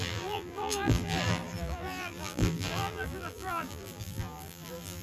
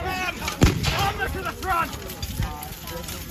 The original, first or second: second